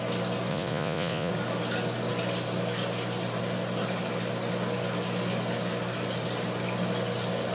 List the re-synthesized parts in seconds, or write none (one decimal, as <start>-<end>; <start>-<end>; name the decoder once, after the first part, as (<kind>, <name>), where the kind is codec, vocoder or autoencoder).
0.5-1.3 (vocoder, Vocos)